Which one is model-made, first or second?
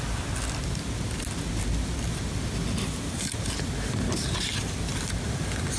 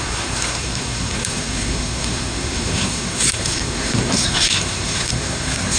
second